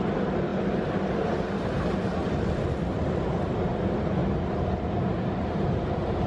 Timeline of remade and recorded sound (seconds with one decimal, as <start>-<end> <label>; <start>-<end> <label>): 0.0-2.2 remade; 2.2-3.7 recorded; 3.7-4.2 remade; 4.2-5.0 recorded; 5.0-6.3 remade